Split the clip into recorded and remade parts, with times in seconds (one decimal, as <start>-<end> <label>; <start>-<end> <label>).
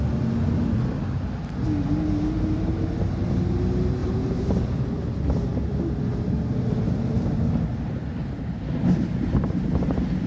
0.0-4.0 recorded; 4.0-4.6 remade; 4.6-10.3 recorded